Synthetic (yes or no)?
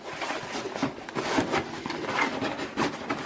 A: no